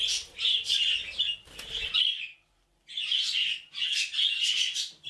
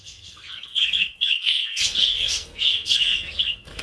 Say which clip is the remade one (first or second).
second